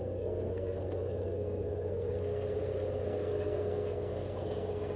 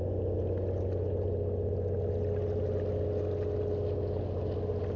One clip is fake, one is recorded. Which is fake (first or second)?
first